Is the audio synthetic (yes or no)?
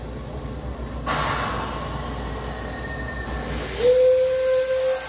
no